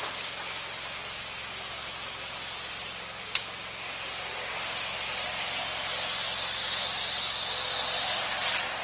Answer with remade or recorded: recorded